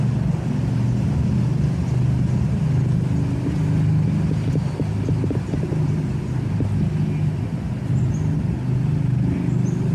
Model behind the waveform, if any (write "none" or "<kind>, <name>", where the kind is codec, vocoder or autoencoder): none